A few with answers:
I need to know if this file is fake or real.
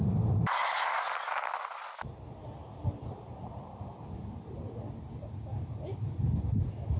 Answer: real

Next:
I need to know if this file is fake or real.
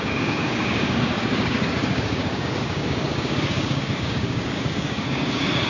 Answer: fake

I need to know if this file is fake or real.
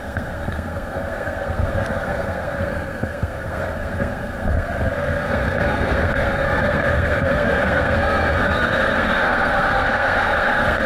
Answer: fake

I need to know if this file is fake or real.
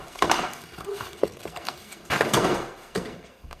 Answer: fake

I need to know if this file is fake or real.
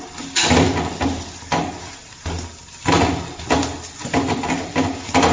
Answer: real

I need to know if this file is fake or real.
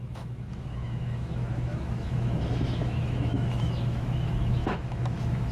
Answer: fake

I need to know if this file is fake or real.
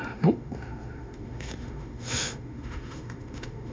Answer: fake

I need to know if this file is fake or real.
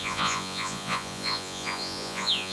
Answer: fake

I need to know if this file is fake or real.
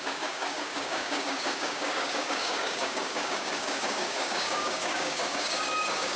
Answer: fake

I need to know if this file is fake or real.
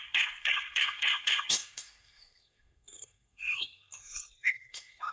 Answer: fake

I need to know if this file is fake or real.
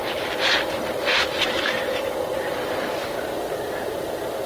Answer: real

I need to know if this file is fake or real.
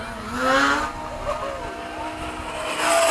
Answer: real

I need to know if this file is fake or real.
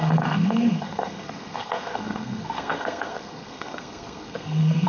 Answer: fake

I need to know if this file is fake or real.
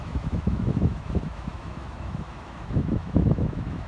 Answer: fake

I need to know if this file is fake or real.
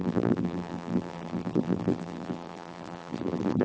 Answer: fake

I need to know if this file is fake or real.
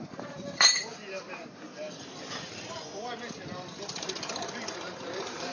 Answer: fake